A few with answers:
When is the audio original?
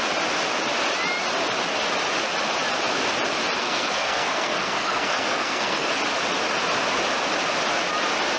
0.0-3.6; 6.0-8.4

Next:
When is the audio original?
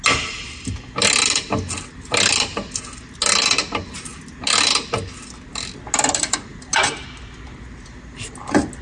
0.0-8.8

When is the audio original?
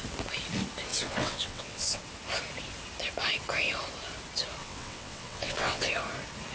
0.0-0.9; 2.0-4.6; 5.9-6.5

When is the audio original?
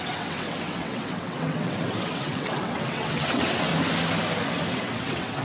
3.7-4.7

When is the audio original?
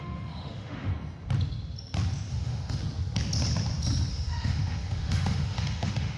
0.9-2.3; 2.8-4.1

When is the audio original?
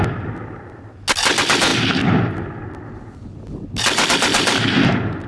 0.0-5.3